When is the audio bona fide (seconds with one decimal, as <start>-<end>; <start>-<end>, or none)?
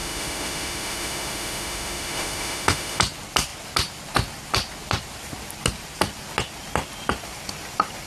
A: 3.0-8.1